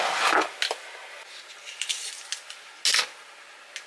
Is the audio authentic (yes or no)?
yes